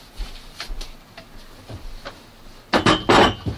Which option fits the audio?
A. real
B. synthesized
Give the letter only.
A